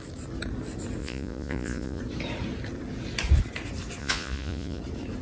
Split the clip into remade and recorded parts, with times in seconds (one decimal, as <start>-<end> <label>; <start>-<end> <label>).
0.0-1.0 recorded; 1.0-2.0 remade; 2.0-4.0 recorded; 4.0-4.8 remade; 4.8-5.2 recorded